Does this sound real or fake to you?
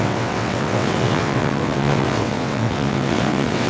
fake